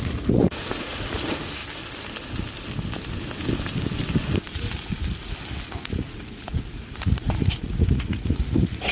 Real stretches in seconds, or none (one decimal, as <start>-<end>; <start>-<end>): 1.6-5.7